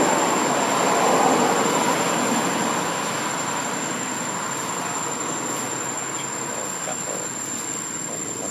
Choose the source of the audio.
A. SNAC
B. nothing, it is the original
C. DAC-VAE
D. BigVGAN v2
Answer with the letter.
B